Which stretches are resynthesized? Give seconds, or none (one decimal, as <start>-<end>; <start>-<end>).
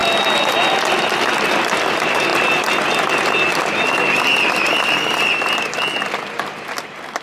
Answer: none